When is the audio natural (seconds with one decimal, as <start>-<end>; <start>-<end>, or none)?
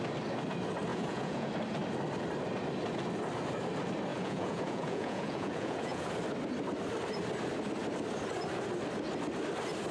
0.0-0.9; 1.5-4.1; 6.1-9.9